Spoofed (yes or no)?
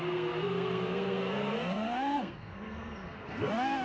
yes